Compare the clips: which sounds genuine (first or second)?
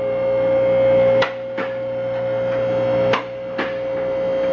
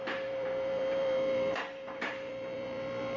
first